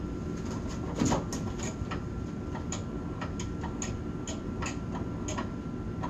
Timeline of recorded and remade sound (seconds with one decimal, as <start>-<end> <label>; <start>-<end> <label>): 0.0-6.1 recorded